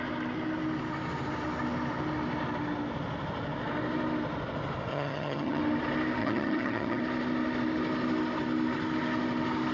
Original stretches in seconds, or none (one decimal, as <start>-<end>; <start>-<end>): 0.0-4.9; 5.6-6.2; 7.0-9.7